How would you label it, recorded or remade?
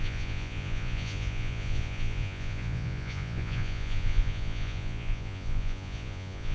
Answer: remade